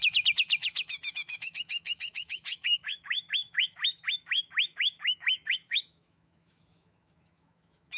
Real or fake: fake